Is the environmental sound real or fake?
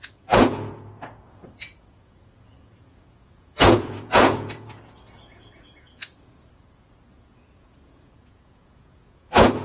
fake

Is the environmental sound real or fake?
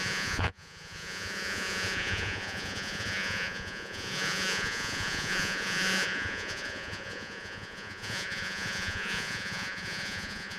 fake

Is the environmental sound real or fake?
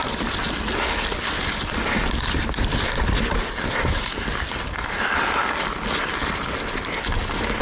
real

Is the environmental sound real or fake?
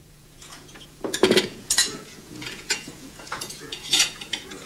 fake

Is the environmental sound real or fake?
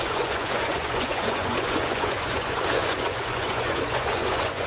fake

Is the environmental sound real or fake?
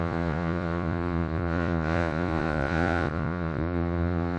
fake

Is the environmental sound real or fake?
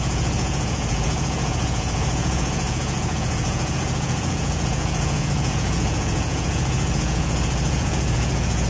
fake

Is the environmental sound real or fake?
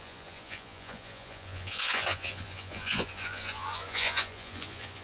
fake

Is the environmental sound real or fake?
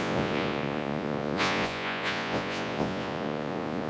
fake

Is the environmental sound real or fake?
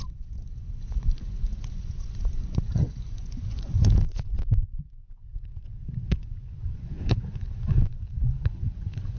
fake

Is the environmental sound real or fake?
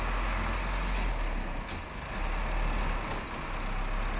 real